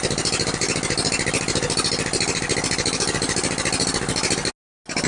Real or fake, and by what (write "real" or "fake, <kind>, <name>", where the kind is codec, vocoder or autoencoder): real